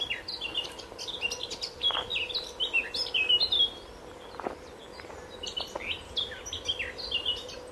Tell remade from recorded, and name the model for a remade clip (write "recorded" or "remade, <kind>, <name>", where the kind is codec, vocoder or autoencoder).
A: recorded